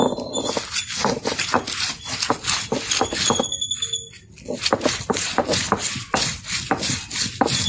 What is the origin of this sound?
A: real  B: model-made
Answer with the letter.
A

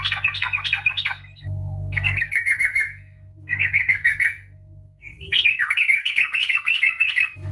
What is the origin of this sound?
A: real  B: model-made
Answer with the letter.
B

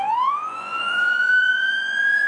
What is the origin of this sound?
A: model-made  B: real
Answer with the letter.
A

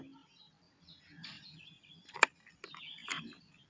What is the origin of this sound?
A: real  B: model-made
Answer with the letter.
A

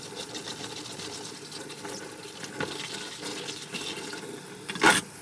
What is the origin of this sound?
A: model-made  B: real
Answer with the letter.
B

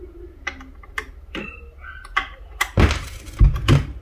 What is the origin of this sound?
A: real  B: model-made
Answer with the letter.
A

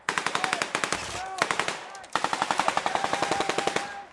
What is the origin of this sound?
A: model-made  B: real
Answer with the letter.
B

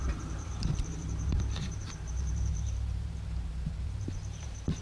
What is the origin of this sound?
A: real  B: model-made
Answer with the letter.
B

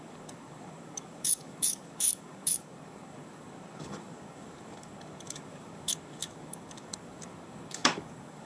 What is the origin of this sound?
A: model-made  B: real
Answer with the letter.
A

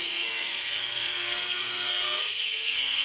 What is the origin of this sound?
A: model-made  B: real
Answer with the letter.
A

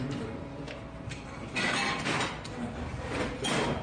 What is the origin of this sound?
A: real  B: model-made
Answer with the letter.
A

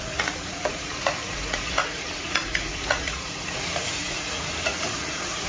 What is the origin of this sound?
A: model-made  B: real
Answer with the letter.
A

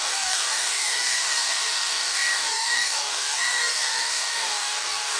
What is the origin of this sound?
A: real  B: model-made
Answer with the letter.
B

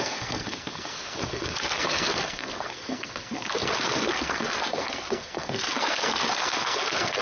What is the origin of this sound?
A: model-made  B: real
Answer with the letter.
A